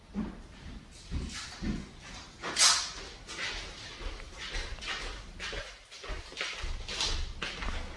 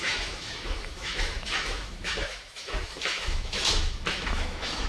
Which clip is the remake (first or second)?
second